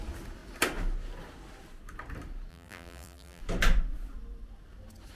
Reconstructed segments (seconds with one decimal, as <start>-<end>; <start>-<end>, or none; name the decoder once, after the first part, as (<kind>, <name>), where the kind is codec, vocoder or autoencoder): 2.5-3.4 (vocoder, BigVGAN v2)